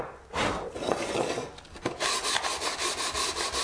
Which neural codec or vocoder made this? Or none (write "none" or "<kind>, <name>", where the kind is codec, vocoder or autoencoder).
none